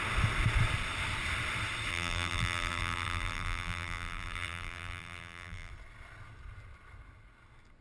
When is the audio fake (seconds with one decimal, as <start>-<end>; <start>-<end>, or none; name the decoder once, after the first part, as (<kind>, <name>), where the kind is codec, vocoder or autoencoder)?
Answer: 1.9-5.7 (vocoder, BigVGAN v2)